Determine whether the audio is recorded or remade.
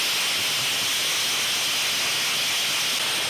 recorded